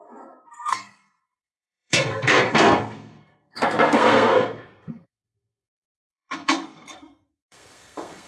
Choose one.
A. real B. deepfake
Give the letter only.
B